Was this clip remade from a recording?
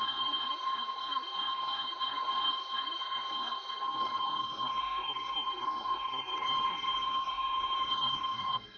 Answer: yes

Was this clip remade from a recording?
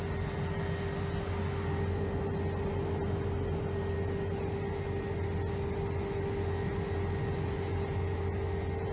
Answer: no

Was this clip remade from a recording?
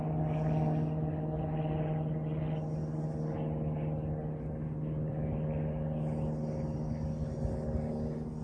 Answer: no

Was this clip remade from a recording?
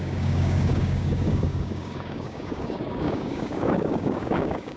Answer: yes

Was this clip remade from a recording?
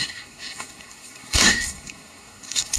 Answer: yes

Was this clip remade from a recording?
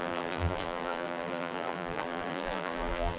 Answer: yes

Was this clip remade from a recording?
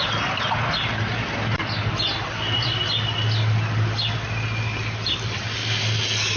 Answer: no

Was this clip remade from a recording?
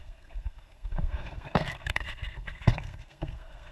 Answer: yes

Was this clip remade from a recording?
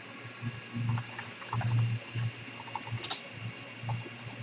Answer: no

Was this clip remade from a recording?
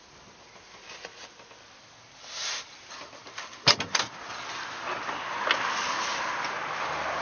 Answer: no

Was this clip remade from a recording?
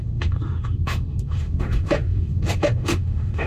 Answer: yes